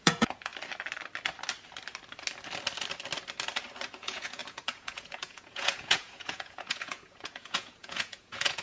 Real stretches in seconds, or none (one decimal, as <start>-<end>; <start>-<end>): 0.5-4.0